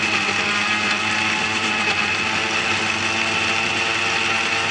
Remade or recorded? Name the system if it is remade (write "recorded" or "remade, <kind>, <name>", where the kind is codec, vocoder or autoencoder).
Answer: recorded